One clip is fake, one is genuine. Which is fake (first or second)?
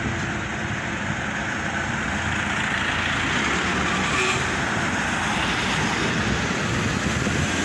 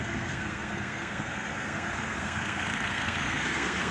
second